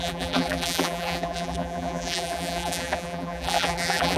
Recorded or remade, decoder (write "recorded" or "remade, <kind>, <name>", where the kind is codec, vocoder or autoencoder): remade, vocoder, BigVGAN v2